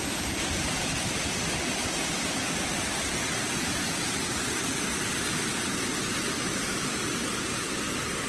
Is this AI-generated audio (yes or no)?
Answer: no